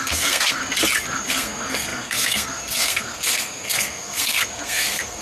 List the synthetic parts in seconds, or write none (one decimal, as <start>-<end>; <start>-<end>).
0.0-0.6; 1.3-5.2